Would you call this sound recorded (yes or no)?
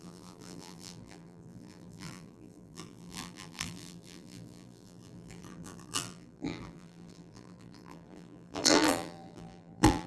no